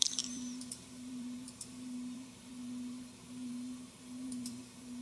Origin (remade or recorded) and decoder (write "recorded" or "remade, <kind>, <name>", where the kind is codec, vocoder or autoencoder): remade, vocoder, BigVGAN v2